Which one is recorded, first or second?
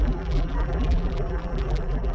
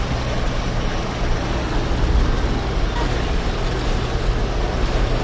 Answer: second